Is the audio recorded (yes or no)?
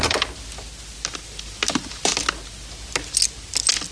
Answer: yes